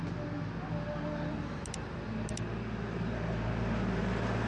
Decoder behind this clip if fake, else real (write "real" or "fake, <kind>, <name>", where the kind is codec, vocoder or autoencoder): real